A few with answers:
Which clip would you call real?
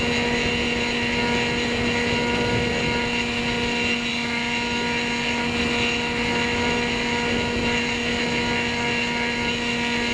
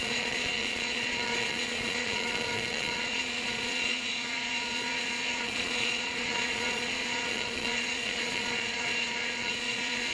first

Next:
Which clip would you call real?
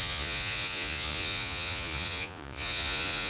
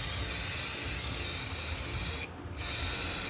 second